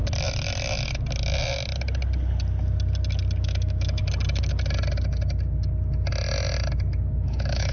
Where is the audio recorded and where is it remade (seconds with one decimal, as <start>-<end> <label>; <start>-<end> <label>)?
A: 0.0-3.4 recorded; 3.4-4.0 remade; 4.0-7.1 recorded; 7.1-7.7 remade